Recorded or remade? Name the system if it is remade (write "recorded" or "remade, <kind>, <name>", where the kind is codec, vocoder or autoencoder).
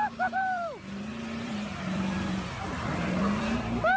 remade, vocoder, BigVGAN v2